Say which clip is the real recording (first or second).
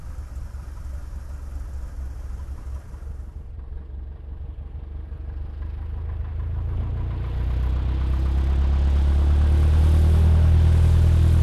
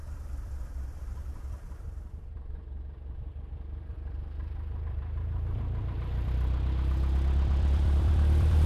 first